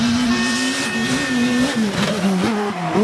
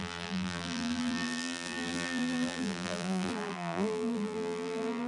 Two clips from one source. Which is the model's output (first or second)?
second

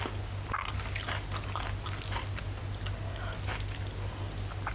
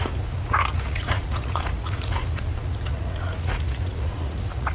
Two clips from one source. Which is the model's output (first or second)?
second